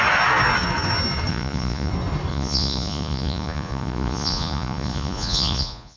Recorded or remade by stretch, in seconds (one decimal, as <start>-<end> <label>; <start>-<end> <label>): 0.0-1.3 recorded; 1.3-1.9 remade; 1.9-2.3 recorded; 2.3-6.0 remade